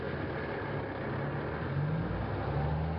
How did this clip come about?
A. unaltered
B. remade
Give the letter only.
A